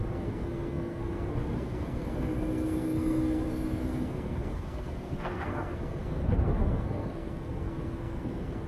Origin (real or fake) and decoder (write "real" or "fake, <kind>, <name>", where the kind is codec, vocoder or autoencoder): fake, codec, SNAC